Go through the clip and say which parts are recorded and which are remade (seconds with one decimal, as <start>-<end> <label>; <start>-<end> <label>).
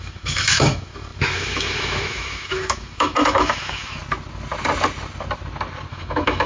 0.0-4.0 remade; 4.0-5.9 recorded; 5.9-6.5 remade